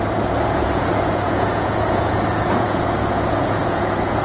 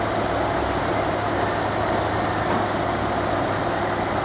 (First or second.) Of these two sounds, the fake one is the first